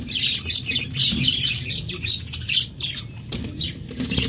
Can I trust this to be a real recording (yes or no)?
yes